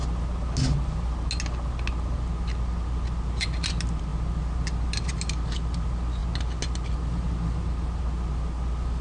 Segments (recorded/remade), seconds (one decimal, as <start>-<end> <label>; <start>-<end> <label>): 0.0-9.0 recorded